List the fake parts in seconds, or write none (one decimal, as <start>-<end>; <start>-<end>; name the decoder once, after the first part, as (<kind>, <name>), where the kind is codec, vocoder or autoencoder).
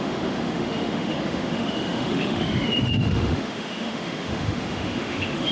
0.0-5.5 (autoencoder, DAC-VAE)